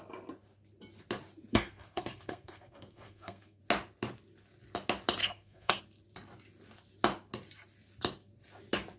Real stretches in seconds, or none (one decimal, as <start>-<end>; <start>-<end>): 0.0-1.5; 3.6-5.2; 5.8-9.0